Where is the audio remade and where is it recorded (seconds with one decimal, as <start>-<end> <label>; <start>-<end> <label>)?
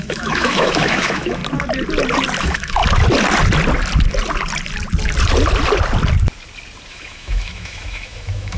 0.0-1.4 remade; 1.4-2.4 recorded; 2.4-2.8 remade; 2.8-6.9 recorded; 6.9-8.6 remade